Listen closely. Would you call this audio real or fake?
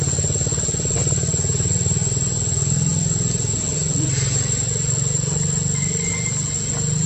real